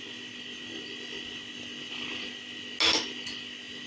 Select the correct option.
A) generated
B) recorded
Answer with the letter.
B